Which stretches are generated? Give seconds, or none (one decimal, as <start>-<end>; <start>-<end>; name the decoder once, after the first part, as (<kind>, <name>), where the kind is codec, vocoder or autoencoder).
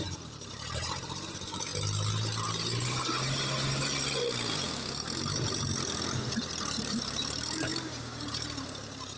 0.0-1.7 (vocoder, BigVGAN v2); 6.7-7.7; 8.3-9.2